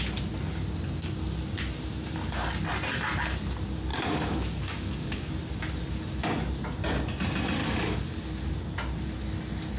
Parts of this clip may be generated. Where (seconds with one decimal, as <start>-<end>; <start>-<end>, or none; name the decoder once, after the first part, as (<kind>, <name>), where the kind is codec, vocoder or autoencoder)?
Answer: 3.9-5.3 (codec, DAC); 7.6-8.2